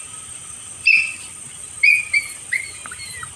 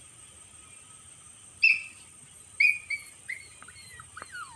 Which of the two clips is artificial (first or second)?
first